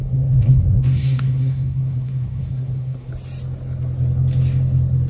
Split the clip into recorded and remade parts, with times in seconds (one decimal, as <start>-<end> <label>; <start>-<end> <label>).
0.0-3.1 remade; 3.1-5.1 recorded